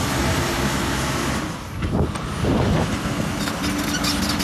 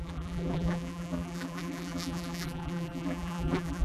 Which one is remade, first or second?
second